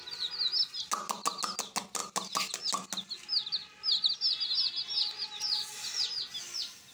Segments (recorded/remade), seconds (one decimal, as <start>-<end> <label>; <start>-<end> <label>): 0.0-6.9 recorded